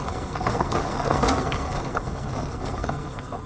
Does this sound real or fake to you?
fake